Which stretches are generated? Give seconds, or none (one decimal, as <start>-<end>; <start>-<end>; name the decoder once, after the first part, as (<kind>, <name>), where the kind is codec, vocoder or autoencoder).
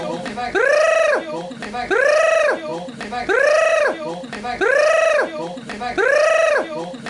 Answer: none